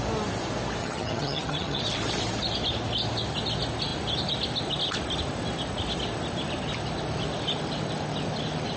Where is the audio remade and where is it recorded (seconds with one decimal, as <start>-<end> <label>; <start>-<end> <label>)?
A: 0.0-0.8 recorded; 0.8-1.8 remade; 1.8-8.8 recorded